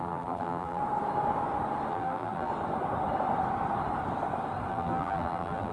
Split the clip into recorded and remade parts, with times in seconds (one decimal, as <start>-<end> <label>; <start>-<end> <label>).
0.0-0.8 remade; 0.8-1.9 recorded; 1.9-2.5 remade; 2.5-4.7 recorded; 4.7-5.7 remade